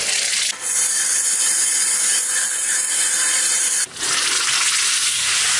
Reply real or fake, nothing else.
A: real